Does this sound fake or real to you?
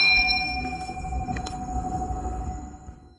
fake